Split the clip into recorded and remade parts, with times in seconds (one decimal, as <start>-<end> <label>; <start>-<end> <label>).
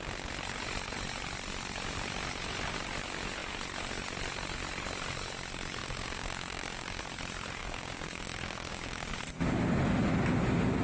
0.0-5.8 recorded; 5.8-7.0 remade; 7.0-7.6 recorded; 7.6-9.1 remade; 9.1-10.8 recorded